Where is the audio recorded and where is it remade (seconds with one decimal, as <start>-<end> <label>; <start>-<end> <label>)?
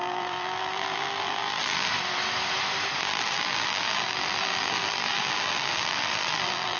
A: 0.0-1.9 remade; 1.9-3.0 recorded; 3.0-6.8 remade